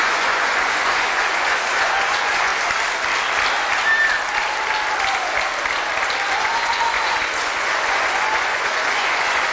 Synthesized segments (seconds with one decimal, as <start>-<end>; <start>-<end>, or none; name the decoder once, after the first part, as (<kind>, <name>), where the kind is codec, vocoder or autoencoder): 0.0-2.5 (vocoder, Vocos); 6.3-9.5